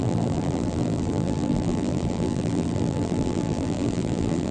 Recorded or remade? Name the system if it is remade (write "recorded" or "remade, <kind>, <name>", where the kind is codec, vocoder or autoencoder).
remade, vocoder, BigVGAN v2